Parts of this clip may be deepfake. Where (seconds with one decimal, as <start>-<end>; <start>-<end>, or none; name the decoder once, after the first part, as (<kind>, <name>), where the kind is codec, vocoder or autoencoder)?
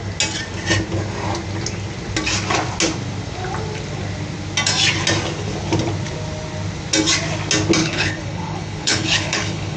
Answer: 7.8-9.8 (codec, HILCodec)